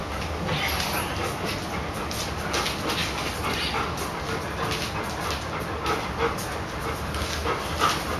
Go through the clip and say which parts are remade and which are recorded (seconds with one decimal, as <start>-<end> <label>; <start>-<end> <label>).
0.0-8.2 recorded